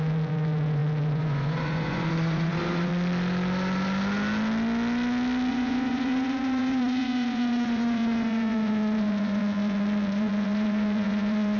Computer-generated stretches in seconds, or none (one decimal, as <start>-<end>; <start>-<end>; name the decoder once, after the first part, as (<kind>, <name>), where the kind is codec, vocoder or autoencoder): 0.0-2.9 (vocoder, Vocos); 5.5-11.6